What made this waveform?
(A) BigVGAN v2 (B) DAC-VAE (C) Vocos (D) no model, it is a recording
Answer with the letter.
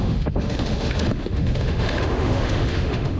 B